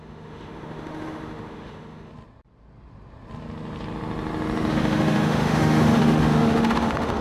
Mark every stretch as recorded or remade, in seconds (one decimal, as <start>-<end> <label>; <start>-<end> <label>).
0.0-2.1 remade; 2.1-4.7 recorded; 4.7-7.2 remade